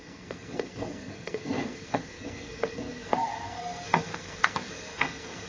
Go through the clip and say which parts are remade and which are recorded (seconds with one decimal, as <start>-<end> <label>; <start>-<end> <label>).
0.0-5.5 remade